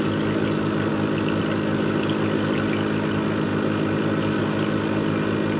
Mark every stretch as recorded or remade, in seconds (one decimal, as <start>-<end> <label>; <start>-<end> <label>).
0.0-5.6 recorded